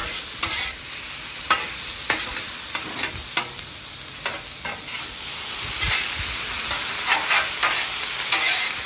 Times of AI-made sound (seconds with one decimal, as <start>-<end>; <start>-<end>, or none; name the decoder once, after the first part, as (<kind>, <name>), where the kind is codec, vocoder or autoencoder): none